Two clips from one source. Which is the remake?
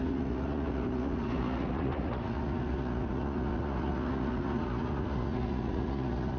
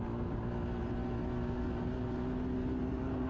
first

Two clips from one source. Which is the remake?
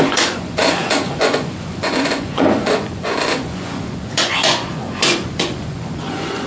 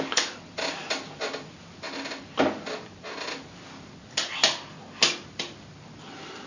first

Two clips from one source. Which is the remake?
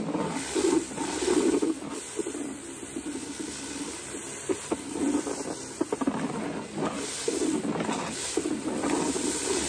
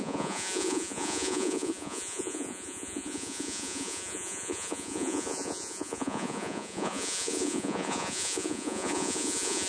second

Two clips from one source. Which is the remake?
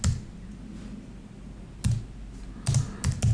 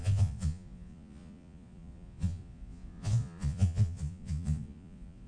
second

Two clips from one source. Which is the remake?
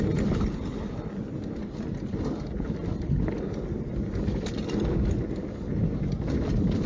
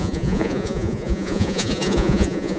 second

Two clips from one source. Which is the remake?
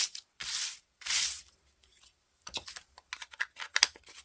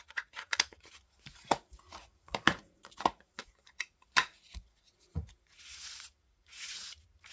second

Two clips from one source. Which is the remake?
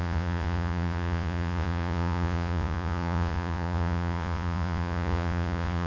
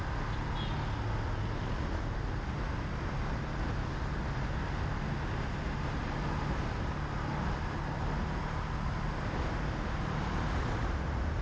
first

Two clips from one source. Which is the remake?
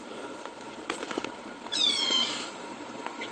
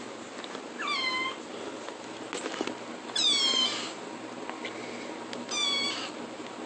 first